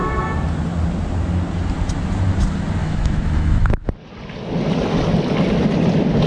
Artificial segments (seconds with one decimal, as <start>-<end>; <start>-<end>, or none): 2.8-3.9